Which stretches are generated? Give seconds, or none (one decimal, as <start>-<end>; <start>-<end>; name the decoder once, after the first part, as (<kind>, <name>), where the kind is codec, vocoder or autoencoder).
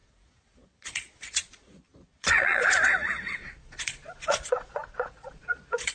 0.0-5.9 (vocoder, Vocos)